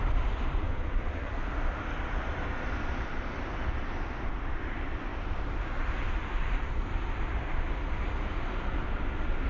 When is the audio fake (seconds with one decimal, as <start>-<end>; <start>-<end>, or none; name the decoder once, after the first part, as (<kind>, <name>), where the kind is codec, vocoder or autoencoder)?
0.6-1.5 (vocoder, Vocos)